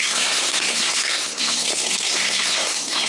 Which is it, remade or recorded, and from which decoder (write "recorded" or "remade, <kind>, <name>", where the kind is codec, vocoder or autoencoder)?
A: remade, codec, SNAC